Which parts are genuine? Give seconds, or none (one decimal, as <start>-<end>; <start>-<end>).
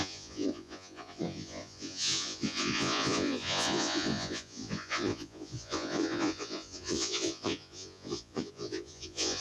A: none